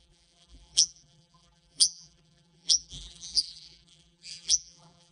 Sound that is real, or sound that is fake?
fake